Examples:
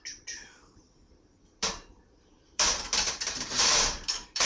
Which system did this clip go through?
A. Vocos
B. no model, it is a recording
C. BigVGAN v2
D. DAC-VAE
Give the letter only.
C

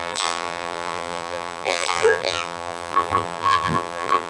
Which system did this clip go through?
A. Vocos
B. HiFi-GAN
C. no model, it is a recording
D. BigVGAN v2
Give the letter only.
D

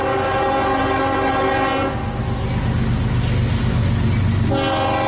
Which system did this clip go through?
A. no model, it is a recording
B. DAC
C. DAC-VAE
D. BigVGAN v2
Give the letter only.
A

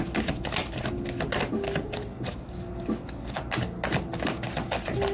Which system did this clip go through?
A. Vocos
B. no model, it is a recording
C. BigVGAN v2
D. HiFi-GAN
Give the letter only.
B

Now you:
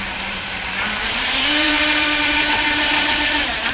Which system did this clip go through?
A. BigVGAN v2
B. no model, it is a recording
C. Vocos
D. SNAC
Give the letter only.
A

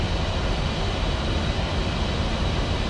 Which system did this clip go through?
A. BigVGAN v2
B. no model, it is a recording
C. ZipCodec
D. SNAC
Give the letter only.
A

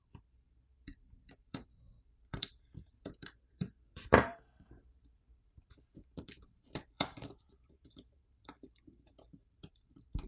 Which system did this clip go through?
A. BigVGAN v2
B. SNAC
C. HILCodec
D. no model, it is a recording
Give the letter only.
A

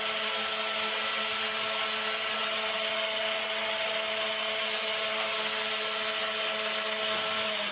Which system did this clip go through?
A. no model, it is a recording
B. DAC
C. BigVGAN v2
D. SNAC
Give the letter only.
A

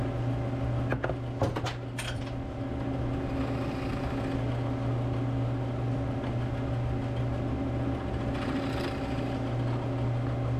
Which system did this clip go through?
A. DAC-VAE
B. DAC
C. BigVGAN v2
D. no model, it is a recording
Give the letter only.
D